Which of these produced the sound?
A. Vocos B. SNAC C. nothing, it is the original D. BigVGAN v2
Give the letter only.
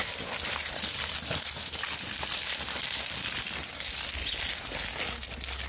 C